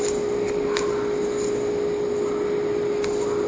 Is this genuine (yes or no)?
yes